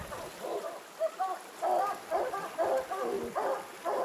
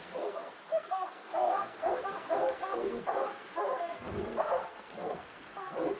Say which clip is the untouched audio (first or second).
first